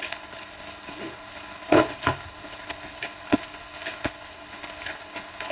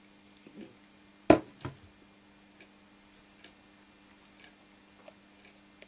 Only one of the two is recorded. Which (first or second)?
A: second